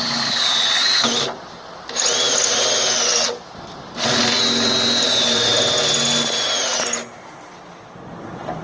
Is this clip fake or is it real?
real